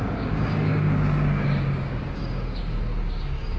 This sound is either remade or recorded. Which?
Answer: remade